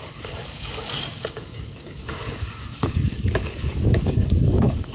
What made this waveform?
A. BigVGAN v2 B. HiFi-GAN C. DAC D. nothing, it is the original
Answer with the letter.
C